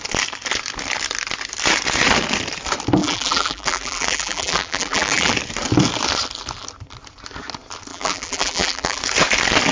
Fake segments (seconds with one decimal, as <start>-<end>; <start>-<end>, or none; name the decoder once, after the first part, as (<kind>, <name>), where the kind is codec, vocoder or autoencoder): 3.0-5.3 (vocoder, BigVGAN v2); 7.9-9.0